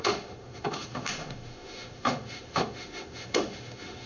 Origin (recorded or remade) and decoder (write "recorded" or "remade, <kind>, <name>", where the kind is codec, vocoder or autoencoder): remade, autoencoder, DAC-VAE